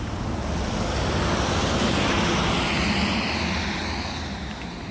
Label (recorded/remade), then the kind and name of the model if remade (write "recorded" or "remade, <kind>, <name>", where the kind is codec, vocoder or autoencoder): recorded